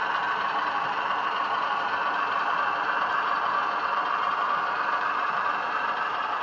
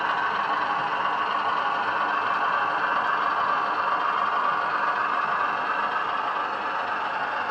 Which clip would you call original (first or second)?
second